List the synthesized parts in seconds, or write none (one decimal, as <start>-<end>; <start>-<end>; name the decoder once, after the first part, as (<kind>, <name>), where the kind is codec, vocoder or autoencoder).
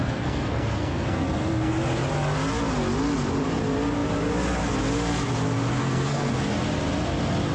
0.0-1.7 (codec, SNAC); 5.8-6.3